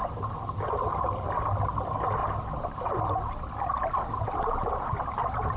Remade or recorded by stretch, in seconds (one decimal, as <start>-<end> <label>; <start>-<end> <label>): 0.0-5.6 recorded